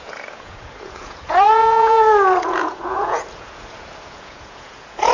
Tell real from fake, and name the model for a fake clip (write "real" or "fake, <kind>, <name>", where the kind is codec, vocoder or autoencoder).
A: fake, vocoder, Vocos